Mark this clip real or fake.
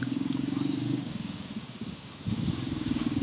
fake